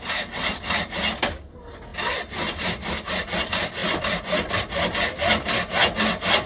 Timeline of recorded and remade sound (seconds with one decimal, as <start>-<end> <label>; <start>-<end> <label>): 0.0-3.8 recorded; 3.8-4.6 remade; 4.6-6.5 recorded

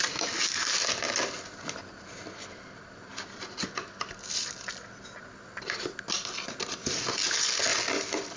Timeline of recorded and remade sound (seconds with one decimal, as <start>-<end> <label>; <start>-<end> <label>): 0.0-8.4 recorded

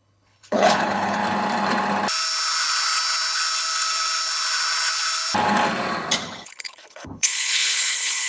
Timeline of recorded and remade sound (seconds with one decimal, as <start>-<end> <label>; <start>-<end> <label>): 0.0-1.2 remade; 1.2-6.2 recorded; 6.2-8.3 remade